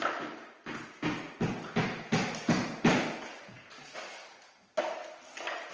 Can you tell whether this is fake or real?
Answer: real